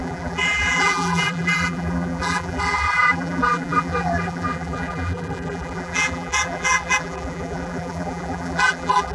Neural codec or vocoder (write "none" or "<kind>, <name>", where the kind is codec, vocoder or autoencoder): vocoder, BigVGAN v2